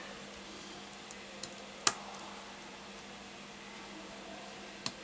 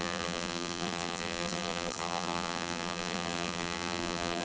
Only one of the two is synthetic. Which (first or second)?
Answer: second